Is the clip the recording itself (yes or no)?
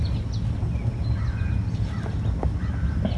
yes